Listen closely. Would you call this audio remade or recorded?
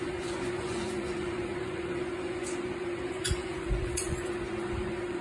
remade